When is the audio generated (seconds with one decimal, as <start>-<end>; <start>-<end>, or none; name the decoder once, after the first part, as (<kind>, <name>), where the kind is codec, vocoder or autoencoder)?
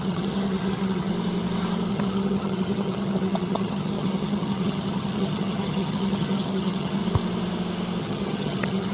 0.0-1.1 (vocoder, HiFi-GAN); 1.9-7.0; 8.0-8.9